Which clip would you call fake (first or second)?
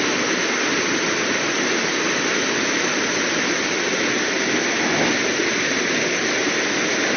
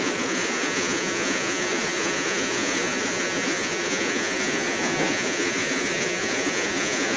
second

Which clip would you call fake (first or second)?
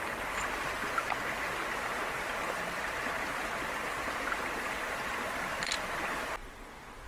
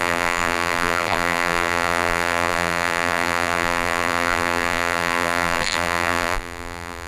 second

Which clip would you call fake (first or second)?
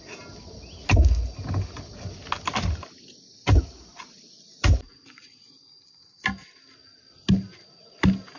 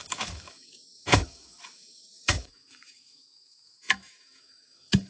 second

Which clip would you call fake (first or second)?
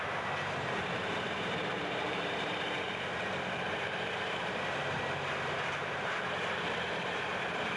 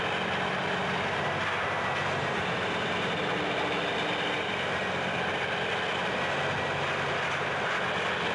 first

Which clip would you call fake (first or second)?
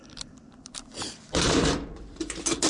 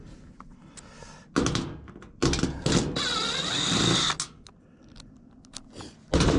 first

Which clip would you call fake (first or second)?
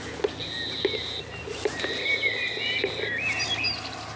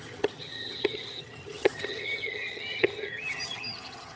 second